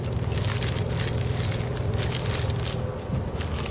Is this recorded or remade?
recorded